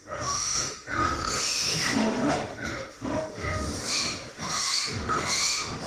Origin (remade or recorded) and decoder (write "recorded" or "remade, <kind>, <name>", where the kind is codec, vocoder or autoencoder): remade, autoencoder, DAC-VAE